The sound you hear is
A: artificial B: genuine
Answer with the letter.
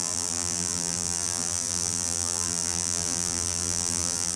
A